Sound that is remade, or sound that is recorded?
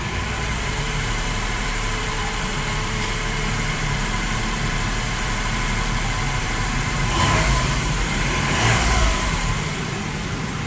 remade